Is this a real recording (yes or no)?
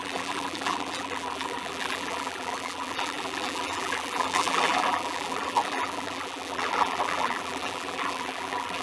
no